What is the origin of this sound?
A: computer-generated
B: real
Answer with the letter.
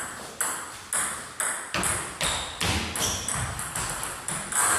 B